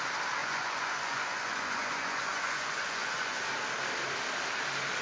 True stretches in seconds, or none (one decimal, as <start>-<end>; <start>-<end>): 0.0-0.4; 3.4-5.0